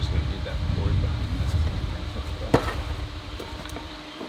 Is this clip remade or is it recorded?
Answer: remade